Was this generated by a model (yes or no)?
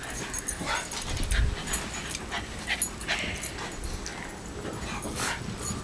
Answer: no